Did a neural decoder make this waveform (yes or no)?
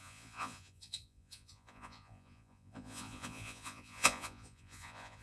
yes